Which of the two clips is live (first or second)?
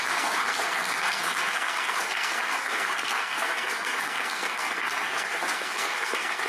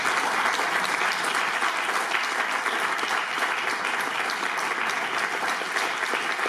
second